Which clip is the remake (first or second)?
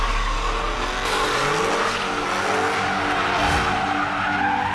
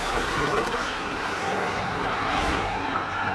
second